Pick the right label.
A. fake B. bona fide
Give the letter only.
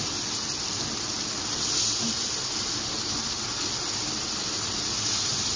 B